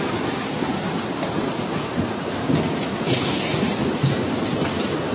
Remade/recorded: recorded